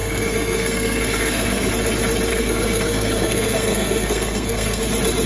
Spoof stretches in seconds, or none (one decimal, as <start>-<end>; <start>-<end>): 0.0-1.7; 2.3-4.8